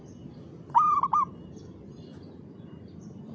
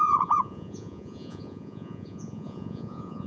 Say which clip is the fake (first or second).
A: second